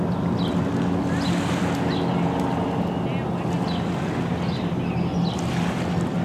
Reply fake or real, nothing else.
real